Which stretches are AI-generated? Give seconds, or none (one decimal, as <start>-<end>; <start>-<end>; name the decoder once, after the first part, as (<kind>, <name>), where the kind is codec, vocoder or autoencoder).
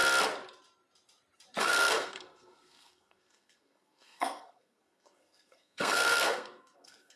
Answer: 1.6-7.2 (codec, SNAC)